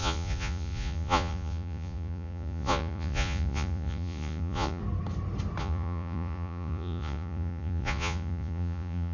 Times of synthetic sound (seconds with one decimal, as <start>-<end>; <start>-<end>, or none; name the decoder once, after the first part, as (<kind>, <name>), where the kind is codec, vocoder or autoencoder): 0.0-4.8 (vocoder, Vocos); 5.6-9.1